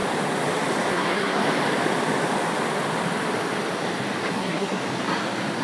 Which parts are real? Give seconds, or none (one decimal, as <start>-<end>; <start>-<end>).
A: 0.0-0.9; 1.4-4.3; 4.8-5.6